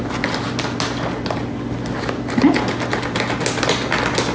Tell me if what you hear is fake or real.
real